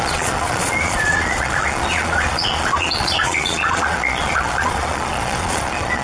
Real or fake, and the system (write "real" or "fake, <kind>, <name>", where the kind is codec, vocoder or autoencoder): fake, vocoder, Vocos